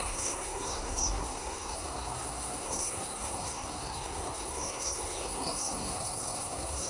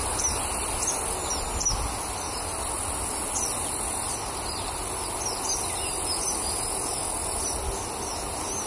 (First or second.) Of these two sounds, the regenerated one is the first